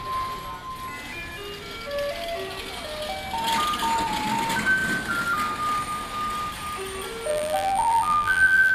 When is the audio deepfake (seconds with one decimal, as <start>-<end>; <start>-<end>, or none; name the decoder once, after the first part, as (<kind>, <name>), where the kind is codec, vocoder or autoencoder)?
7.3-8.7 (vocoder, BigVGAN v2)